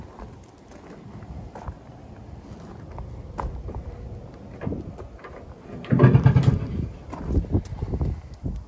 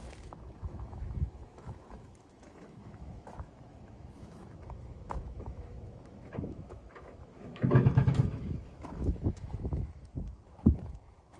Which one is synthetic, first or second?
second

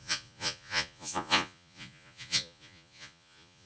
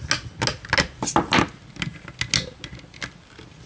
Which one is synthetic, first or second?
first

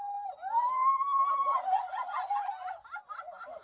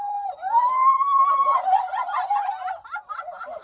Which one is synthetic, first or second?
second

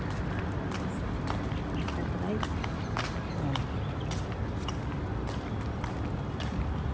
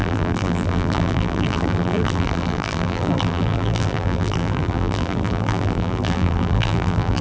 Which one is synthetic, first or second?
second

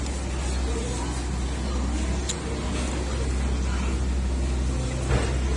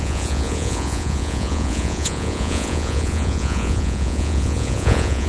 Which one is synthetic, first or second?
second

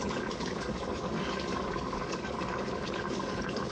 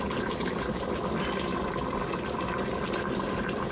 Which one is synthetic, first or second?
first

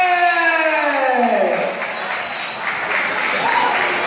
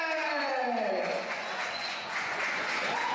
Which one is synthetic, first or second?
second